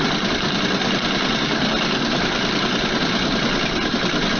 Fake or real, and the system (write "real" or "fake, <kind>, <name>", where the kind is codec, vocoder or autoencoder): real